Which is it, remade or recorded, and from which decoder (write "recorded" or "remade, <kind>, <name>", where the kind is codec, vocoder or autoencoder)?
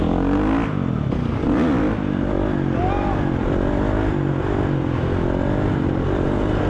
recorded